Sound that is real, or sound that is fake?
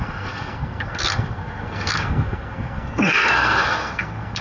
fake